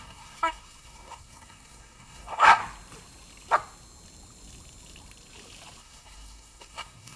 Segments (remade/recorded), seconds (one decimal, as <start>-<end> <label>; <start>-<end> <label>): 0.0-2.6 remade; 2.6-5.8 recorded; 5.8-7.2 remade